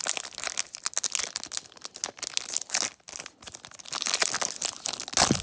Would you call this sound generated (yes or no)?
no